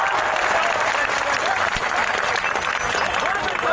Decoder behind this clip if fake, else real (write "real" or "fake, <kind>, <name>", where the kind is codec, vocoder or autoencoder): real